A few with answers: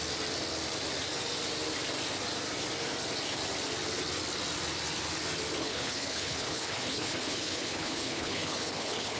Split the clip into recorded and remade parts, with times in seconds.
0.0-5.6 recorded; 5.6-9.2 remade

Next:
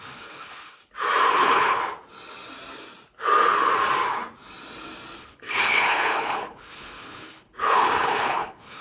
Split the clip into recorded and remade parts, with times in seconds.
0.0-0.8 remade; 0.8-1.3 recorded; 1.3-1.8 remade; 1.8-5.2 recorded; 5.2-8.8 remade

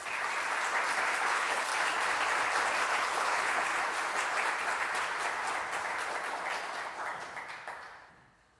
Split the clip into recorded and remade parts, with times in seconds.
0.0-1.2 recorded; 1.2-1.7 remade; 1.7-2.9 recorded; 2.9-3.7 remade; 3.7-8.1 recorded; 8.1-8.6 remade